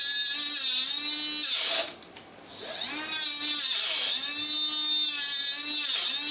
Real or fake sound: real